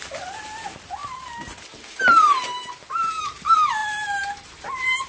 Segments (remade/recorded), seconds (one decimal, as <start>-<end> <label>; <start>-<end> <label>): 0.0-3.8 recorded; 3.8-5.1 remade